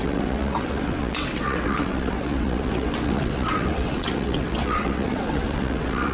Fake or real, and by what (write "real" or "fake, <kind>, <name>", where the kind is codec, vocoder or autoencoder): fake, vocoder, WaveNeXt